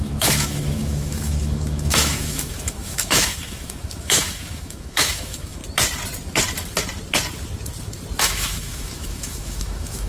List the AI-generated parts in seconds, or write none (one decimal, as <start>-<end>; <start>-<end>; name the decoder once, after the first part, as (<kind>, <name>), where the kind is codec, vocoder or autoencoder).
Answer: 0.0-5.6 (autoencoder, DAC-VAE); 8.2-10.1